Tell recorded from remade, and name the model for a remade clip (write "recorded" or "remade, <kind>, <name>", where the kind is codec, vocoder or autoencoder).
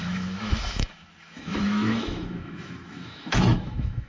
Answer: remade, autoencoder, DAC-VAE